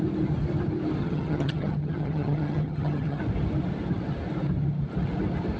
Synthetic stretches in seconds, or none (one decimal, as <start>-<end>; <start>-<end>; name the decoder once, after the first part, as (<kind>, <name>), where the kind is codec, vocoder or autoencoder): 1.0-3.2 (vocoder, HiFi-GAN)